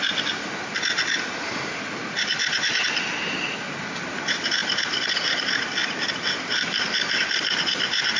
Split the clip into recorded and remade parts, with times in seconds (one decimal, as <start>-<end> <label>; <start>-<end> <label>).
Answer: 0.0-8.2 recorded